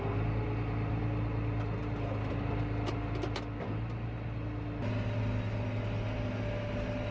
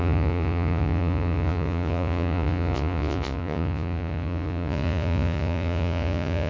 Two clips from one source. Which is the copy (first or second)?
second